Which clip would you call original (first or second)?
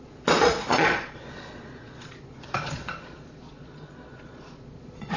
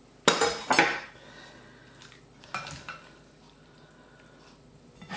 second